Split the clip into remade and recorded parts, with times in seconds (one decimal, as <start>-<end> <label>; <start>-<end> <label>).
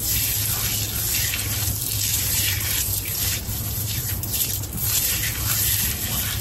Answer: 0.0-2.1 recorded; 2.1-5.3 remade; 5.3-6.4 recorded